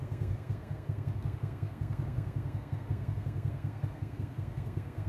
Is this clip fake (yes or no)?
yes